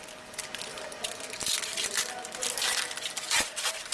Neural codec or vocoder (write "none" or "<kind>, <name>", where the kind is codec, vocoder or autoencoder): none